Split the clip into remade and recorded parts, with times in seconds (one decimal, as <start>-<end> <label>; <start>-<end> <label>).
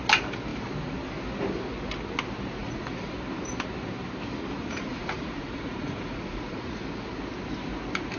0.0-2.6 recorded; 2.6-3.1 remade; 3.1-4.6 recorded; 4.6-6.8 remade; 6.8-8.2 recorded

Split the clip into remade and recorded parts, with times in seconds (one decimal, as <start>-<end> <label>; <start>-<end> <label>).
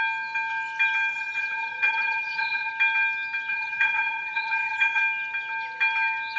0.0-1.1 recorded; 1.1-2.7 remade; 2.7-3.5 recorded; 3.5-5.0 remade; 5.0-6.4 recorded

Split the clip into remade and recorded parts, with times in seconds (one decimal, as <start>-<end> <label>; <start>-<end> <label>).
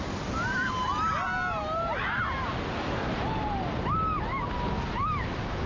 0.0-5.7 recorded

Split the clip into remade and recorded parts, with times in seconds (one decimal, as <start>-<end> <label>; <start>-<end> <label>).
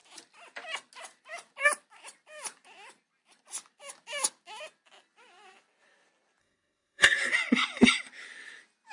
0.0-6.4 recorded; 6.4-7.3 remade; 7.3-8.9 recorded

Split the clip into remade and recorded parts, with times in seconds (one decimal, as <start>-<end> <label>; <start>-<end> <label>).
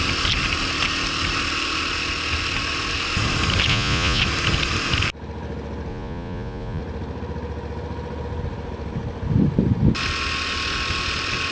0.0-3.7 recorded; 3.7-4.2 remade; 4.2-5.9 recorded; 5.9-6.8 remade; 6.8-11.5 recorded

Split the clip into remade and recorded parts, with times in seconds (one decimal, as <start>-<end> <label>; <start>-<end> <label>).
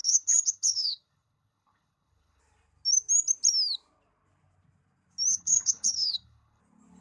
0.0-2.4 remade; 2.4-5.3 recorded; 5.3-6.6 remade; 6.6-7.0 recorded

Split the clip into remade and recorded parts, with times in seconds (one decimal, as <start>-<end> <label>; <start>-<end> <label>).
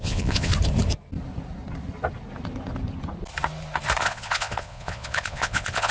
0.0-0.5 remade; 0.5-4.0 recorded; 4.0-5.9 remade